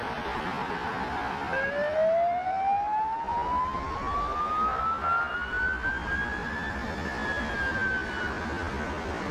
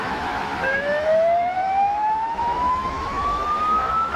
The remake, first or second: second